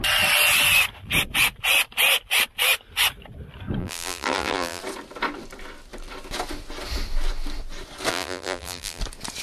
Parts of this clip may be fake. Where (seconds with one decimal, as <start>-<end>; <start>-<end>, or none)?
3.8-4.8; 8.1-9.0